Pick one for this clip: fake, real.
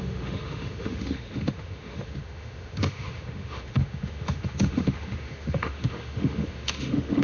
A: fake